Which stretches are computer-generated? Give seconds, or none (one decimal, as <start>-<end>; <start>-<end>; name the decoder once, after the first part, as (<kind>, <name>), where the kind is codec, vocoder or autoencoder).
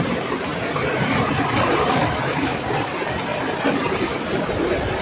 2.0-2.6 (autoencoder, DAC-VAE)